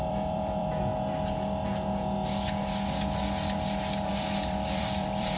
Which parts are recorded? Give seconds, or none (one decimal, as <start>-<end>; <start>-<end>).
0.9-4.1